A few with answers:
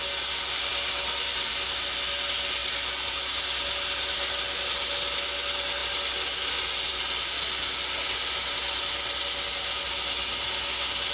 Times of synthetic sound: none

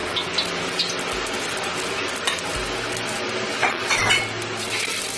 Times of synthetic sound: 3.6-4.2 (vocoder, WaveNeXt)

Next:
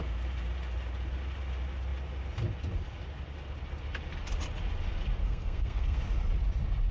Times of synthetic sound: 5.2-6.0 (codec, SNAC)